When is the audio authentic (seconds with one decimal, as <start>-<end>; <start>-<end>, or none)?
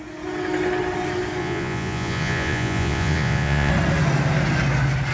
0.0-1.4; 3.7-5.1